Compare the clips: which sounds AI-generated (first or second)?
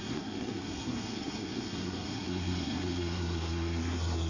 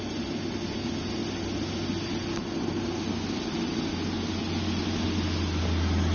first